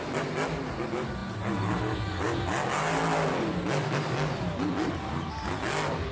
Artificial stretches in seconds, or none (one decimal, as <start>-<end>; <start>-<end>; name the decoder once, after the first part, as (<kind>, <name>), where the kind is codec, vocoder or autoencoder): none